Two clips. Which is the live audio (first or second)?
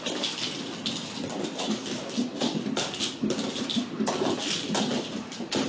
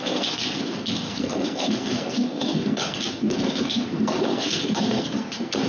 first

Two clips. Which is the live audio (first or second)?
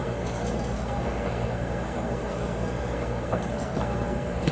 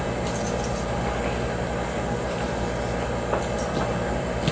second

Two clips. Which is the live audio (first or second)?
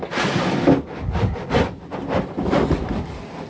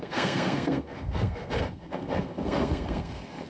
first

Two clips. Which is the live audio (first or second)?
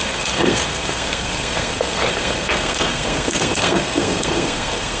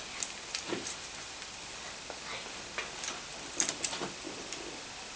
second